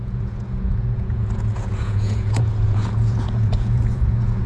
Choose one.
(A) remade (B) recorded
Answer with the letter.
A